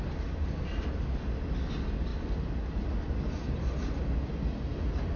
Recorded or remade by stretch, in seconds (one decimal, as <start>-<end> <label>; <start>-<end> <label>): 0.0-5.2 recorded